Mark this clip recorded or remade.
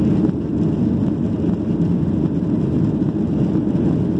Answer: recorded